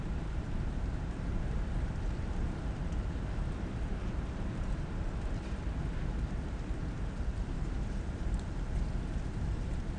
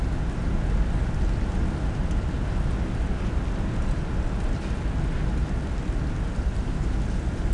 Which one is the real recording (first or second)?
second